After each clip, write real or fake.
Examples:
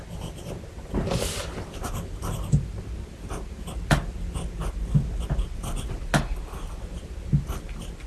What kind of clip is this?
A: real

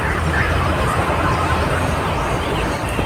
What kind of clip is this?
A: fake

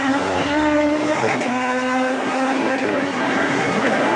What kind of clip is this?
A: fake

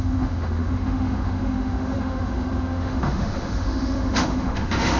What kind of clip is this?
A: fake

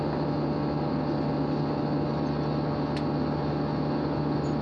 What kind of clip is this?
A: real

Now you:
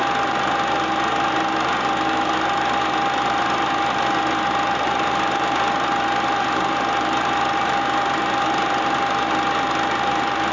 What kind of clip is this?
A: real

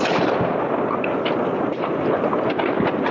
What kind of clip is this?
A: real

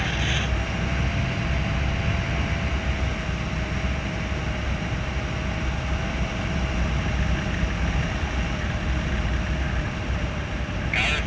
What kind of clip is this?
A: real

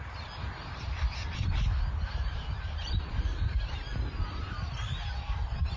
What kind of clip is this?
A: fake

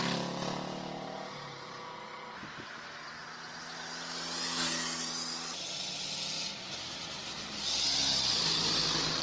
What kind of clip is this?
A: real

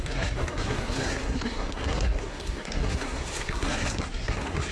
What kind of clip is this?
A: fake